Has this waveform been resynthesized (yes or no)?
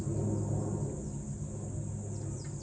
no